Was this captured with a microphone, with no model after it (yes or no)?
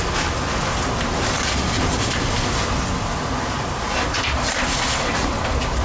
yes